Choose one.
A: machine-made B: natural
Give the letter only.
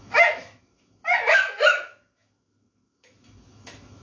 A